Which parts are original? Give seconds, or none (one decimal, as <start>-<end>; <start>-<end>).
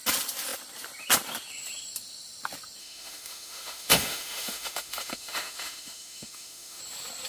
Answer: 0.0-2.8; 6.8-7.3